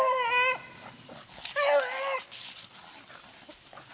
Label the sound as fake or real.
real